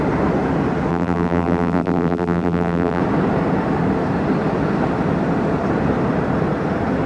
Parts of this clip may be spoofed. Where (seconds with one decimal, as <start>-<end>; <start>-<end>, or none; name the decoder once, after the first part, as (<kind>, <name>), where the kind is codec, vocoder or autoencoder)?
0.9-3.0 (vocoder, BigVGAN v2)